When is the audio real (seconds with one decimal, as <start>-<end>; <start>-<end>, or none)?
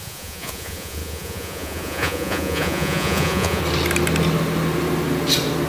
3.6-5.7